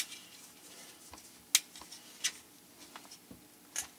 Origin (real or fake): real